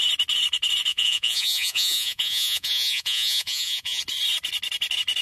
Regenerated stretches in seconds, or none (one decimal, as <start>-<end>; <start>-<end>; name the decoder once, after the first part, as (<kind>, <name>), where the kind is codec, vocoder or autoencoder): 0.9-4.0 (vocoder, Vocos)